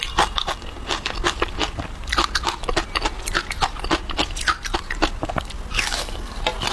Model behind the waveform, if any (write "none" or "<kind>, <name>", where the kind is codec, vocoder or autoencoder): none